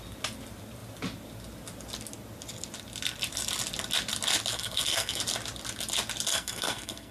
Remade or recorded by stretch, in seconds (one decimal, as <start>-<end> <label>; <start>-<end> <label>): 0.0-4.5 recorded; 4.5-5.2 remade; 5.2-6.3 recorded; 6.3-7.1 remade